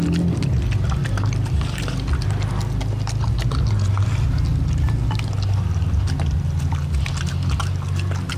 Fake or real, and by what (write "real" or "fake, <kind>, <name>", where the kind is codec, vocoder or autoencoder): real